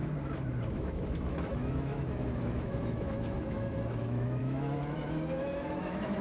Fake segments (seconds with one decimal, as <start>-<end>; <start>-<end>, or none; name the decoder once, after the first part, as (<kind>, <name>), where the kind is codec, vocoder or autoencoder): 0.7-6.2 (autoencoder, DAC-VAE)